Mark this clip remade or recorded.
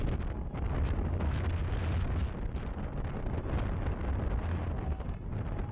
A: recorded